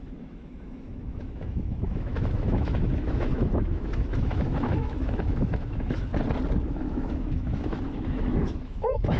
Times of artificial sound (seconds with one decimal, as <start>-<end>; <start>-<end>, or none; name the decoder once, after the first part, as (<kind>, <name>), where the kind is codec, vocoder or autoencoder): 0.0-6.1 (autoencoder, DAC-VAE); 6.7-9.2